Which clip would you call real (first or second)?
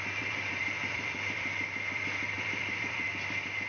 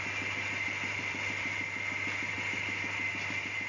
second